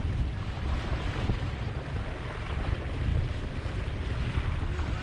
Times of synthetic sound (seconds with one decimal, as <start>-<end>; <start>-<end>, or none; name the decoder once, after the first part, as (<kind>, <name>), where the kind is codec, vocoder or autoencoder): none